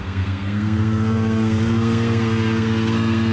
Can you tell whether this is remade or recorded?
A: remade